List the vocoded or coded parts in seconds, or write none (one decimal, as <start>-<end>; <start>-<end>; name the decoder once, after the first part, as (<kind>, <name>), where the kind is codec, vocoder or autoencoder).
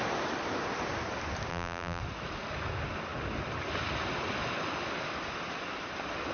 1.5-2.0 (vocoder, BigVGAN v2)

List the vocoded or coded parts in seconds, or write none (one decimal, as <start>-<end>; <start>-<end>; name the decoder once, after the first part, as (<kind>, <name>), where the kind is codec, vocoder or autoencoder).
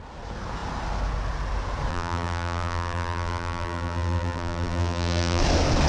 1.9-5.4 (vocoder, BigVGAN v2)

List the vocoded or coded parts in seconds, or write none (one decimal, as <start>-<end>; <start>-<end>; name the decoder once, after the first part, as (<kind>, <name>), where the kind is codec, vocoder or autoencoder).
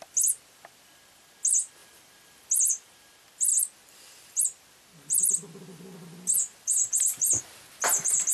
3.5-4.6 (vocoder, BigVGAN v2); 6.3-7.4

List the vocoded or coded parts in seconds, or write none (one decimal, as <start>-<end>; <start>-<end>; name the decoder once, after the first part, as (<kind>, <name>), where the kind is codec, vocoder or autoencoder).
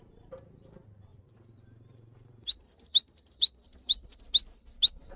1.1-4.2 (vocoder, BigVGAN v2)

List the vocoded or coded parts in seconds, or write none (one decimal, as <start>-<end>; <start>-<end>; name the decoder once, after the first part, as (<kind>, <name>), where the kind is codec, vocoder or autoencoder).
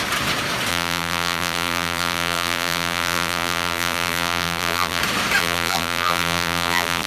0.7-5.0 (vocoder, BigVGAN v2); 5.4-7.1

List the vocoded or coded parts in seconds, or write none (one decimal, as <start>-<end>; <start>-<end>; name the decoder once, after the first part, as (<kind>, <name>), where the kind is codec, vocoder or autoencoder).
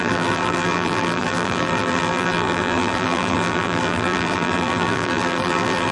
0.0-5.9 (vocoder, BigVGAN v2)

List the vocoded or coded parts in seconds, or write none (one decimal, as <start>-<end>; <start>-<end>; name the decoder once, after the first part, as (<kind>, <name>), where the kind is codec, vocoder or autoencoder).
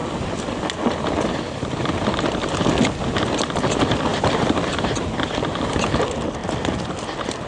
4.1-5.9 (vocoder, BigVGAN v2)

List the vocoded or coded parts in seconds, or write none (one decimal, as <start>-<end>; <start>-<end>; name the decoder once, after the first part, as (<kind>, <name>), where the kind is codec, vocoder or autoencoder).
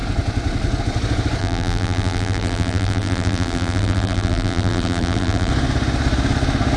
1.4-5.5 (vocoder, BigVGAN v2)